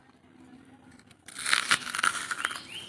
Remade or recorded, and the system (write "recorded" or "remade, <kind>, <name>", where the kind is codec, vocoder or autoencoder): recorded